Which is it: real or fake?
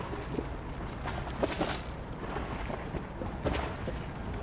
real